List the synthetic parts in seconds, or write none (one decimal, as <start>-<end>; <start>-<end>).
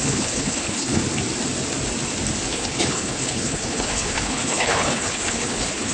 0.0-1.0; 2.5-5.9